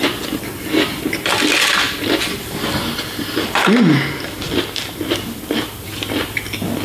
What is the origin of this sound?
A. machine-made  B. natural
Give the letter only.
B